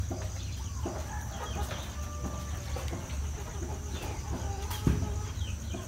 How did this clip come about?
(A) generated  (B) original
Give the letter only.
B